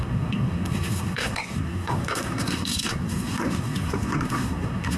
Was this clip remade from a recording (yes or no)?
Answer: yes